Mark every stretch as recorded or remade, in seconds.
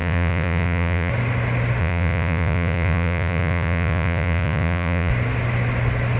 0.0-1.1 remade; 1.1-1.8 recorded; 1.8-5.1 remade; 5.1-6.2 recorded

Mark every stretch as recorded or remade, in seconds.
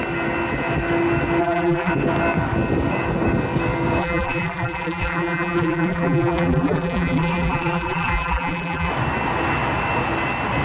0.0-1.4 recorded; 1.4-1.9 remade; 1.9-4.0 recorded; 4.0-8.9 remade; 8.9-10.6 recorded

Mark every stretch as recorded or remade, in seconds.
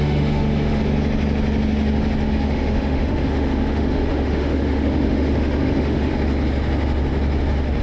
0.0-0.8 remade; 0.8-2.3 recorded; 2.3-6.1 remade; 6.1-7.8 recorded